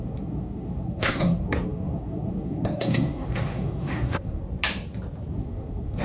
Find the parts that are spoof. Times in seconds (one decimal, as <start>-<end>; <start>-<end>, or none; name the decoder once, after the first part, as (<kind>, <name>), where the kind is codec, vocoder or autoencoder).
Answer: 0.0-4.4 (codec, SNAC); 5.3-6.0